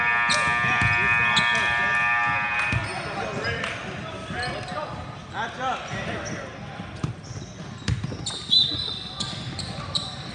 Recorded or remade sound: recorded